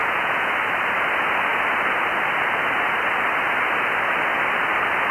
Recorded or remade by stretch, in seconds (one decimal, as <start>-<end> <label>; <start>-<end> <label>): 0.0-0.5 remade; 0.5-5.1 recorded